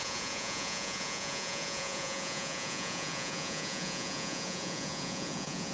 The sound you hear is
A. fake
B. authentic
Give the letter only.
A